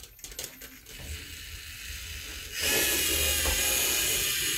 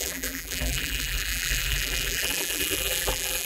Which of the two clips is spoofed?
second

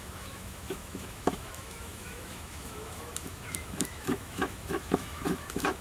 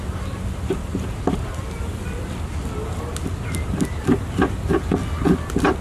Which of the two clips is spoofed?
first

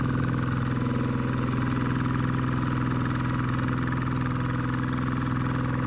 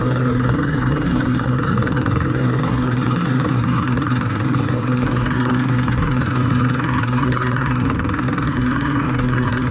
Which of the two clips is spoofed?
second